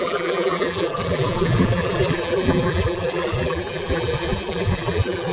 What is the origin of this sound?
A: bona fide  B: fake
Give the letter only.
B